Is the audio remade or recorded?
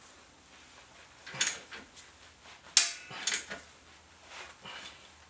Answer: recorded